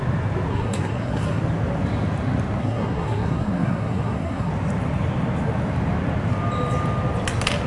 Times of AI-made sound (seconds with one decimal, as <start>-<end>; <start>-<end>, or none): 0.5-1.4; 2.6-4.5